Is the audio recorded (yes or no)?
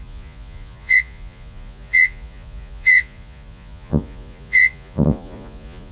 no